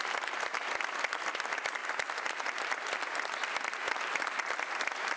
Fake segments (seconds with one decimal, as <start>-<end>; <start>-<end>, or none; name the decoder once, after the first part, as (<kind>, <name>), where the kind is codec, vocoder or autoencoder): none